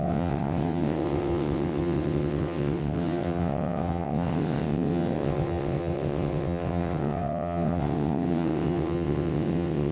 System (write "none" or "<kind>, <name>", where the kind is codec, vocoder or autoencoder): vocoder, WaveNeXt